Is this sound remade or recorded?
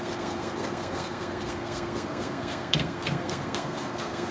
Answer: remade